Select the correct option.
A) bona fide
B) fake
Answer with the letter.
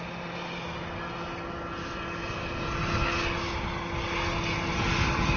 A